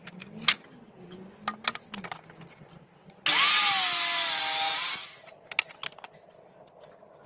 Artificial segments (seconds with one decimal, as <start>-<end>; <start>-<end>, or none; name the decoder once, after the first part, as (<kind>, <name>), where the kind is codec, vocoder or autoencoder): none